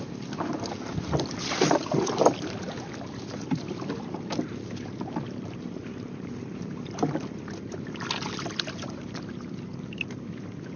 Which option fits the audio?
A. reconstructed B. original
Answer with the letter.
B